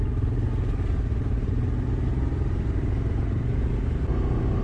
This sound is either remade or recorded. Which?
recorded